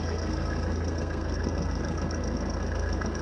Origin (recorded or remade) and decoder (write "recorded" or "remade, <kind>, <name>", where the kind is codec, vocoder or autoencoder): remade, codec, SNAC